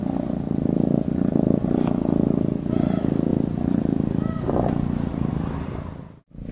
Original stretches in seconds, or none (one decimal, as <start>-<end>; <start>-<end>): 0.0-6.5